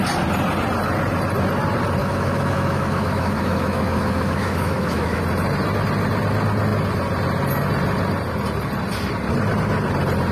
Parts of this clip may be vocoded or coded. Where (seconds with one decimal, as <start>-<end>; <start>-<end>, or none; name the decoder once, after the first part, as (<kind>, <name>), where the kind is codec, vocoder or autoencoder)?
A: 2.0-5.2 (autoencoder, DAC-VAE)